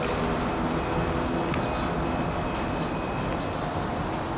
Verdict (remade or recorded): recorded